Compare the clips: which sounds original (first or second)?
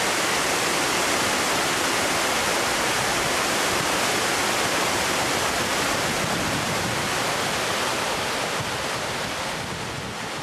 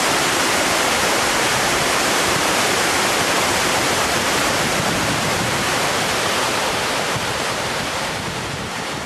first